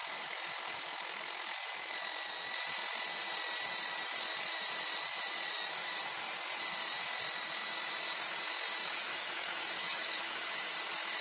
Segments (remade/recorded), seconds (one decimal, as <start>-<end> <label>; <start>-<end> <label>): 0.0-8.8 recorded; 8.8-10.5 remade; 10.5-11.2 recorded